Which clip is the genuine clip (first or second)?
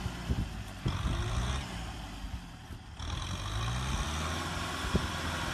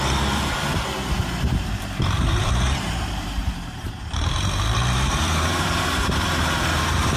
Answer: first